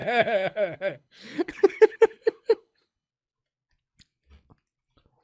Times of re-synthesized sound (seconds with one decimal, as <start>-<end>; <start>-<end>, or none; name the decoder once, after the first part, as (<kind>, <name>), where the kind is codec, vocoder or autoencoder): 0.0-3.1 (codec, HILCodec)